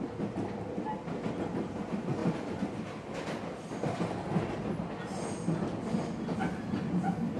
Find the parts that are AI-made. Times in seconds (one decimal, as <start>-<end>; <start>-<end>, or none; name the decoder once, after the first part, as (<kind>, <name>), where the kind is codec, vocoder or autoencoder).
none